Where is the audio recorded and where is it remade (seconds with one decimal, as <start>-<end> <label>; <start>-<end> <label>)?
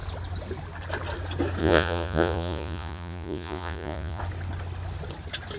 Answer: 0.0-1.6 recorded; 1.6-4.2 remade; 4.2-5.6 recorded